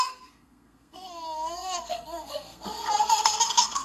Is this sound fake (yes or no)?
yes